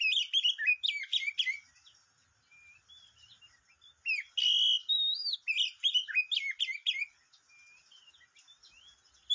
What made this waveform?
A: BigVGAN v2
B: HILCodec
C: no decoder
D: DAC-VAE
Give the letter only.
C